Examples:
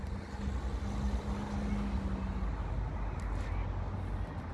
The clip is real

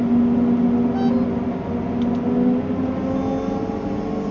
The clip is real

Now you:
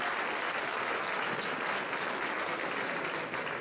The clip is real